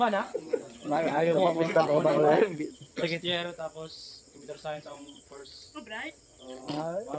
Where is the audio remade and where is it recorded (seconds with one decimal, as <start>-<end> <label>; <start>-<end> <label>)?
0.0-5.4 remade; 5.4-6.1 recorded; 6.1-7.2 remade